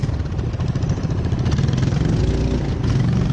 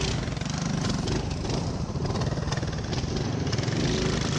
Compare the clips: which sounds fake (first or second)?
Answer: second